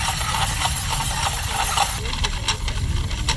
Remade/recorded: recorded